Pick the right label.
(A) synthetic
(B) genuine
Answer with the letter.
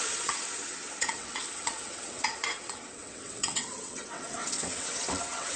A